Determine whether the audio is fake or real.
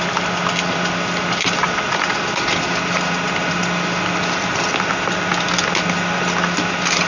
real